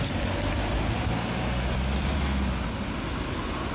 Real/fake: real